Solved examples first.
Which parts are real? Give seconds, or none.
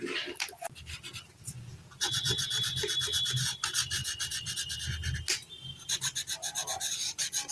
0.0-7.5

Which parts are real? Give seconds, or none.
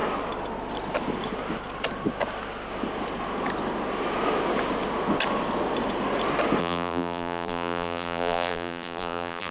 0.0-6.6